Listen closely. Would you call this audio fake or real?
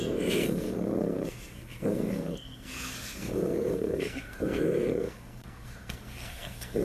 fake